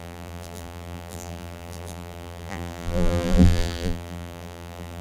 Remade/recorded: remade